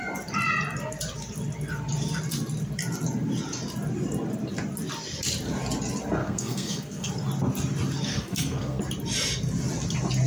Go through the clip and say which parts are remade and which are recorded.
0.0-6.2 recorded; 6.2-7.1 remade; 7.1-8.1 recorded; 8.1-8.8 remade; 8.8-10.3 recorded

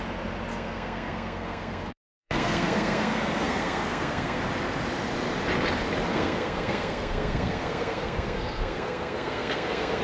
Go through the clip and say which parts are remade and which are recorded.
0.0-0.5 recorded; 0.5-4.4 remade; 4.4-6.1 recorded; 6.1-10.0 remade

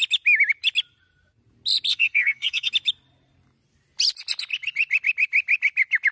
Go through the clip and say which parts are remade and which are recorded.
0.0-1.9 recorded; 1.9-2.7 remade; 2.7-6.1 recorded